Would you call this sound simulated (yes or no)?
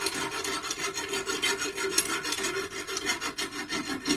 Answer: no